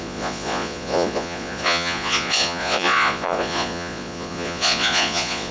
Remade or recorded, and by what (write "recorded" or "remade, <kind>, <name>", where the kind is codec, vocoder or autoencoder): remade, vocoder, Vocos